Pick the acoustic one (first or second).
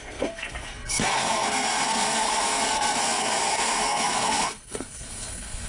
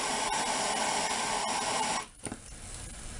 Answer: second